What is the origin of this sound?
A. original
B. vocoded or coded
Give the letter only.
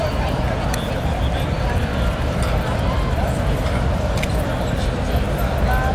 B